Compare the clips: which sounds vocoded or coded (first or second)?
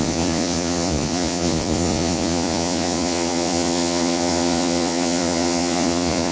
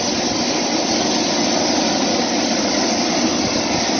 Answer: first